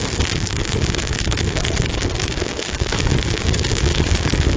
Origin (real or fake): fake